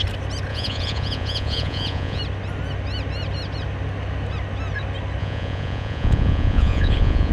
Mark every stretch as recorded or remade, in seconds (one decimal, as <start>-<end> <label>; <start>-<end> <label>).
0.0-0.5 recorded; 0.5-2.2 remade; 2.2-5.2 recorded; 5.2-7.3 remade